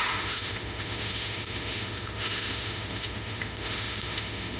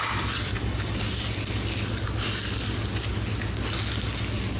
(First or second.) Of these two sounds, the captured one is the second